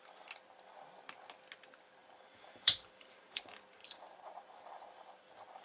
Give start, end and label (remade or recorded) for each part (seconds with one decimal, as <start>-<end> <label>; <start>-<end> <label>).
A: 0.0-2.0 recorded; 2.0-3.4 remade; 3.4-3.8 recorded; 3.8-5.1 remade; 5.1-5.6 recorded